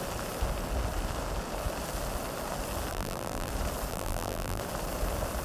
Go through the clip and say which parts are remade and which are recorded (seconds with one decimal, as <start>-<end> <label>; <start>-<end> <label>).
0.0-2.9 recorded; 2.9-3.5 remade; 3.5-3.9 recorded; 3.9-4.6 remade; 4.6-5.4 recorded